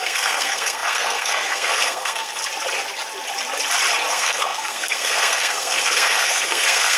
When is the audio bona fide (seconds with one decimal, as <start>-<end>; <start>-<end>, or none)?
2.4-4.1